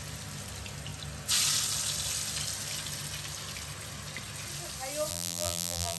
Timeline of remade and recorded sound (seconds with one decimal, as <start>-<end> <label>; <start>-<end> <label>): 0.0-5.1 recorded; 5.1-6.0 remade